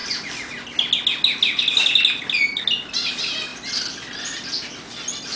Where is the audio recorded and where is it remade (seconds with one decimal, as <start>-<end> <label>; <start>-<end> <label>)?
0.0-5.3 recorded